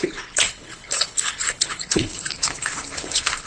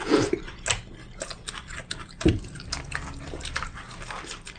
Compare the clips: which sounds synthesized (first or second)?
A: first